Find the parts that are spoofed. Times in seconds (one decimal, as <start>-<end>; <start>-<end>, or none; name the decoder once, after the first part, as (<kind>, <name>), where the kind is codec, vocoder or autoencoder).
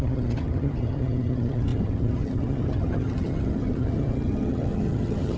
0.0-5.4 (vocoder, HiFi-GAN)